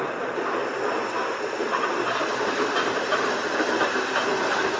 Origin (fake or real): real